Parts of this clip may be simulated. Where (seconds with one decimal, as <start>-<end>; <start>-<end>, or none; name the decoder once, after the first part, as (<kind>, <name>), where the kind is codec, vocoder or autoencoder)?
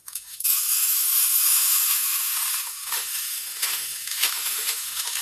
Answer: 0.0-5.2 (autoencoder, DAC-VAE)